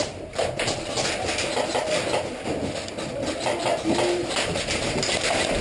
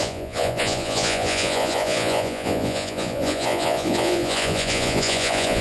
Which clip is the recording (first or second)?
first